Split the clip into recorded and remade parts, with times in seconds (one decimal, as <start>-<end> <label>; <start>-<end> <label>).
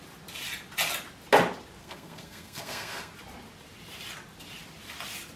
0.0-1.8 recorded; 1.8-3.1 remade; 3.1-5.4 recorded